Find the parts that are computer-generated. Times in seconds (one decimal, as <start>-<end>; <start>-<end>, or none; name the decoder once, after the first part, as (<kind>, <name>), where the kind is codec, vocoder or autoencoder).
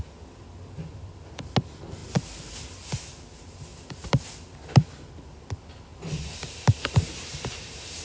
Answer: 5.9-8.0 (vocoder, BigVGAN v2)